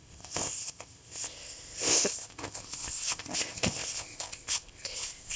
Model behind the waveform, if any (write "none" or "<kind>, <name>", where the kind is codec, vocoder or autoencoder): codec, ZipCodec